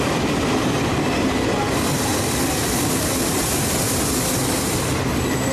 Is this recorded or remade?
recorded